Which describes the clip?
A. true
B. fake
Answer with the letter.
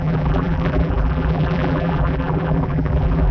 B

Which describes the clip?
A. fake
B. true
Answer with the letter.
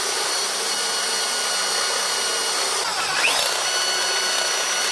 B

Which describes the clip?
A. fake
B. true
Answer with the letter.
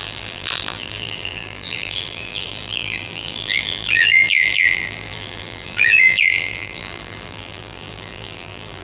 A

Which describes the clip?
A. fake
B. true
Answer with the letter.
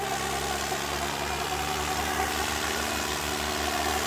B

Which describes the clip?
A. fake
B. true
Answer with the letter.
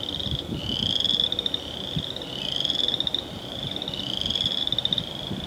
B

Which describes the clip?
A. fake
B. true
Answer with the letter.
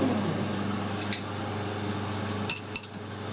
B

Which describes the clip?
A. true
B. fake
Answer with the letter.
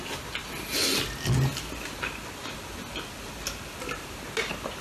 A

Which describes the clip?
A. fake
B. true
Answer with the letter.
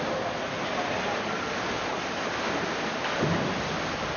B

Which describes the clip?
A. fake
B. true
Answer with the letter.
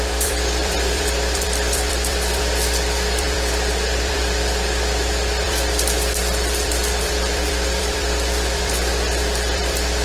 A